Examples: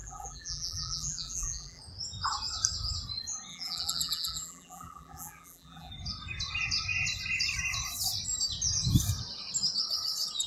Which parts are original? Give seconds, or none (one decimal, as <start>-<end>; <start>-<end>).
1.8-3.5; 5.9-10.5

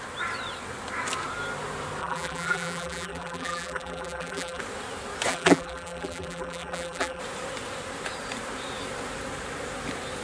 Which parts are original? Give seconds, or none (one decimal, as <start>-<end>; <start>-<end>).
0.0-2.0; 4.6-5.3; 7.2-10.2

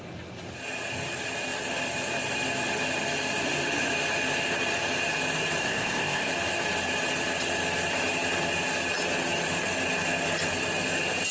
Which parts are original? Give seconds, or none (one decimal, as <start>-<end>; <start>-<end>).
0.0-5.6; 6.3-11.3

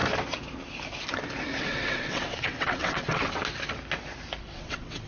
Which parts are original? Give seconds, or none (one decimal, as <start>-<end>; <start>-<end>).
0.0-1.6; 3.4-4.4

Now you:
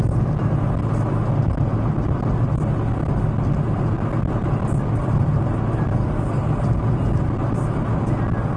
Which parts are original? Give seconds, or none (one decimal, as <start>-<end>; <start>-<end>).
0.0-1.7; 2.2-8.6

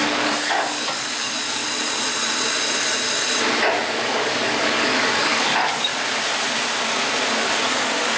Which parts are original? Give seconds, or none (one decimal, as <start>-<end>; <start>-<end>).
1.6-4.0; 5.9-7.3

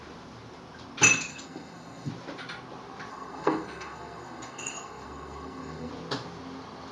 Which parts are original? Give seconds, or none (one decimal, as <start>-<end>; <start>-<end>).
0.0-1.3; 2.1-3.1; 5.9-6.9

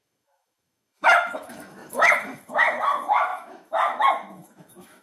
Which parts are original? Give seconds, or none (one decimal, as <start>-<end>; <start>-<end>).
none